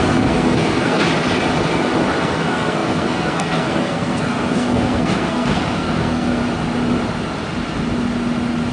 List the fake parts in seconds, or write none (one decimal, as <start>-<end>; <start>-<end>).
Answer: 0.0-1.0; 2.2-6.4